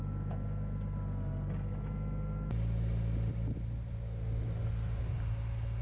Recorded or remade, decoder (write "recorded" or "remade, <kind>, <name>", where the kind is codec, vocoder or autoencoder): recorded